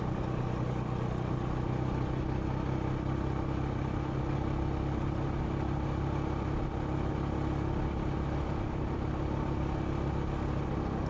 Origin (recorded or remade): recorded